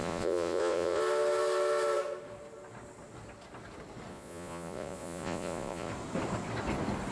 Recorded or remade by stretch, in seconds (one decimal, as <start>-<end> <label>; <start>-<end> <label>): 0.0-1.0 remade; 1.0-4.1 recorded; 4.1-5.9 remade; 5.9-7.1 recorded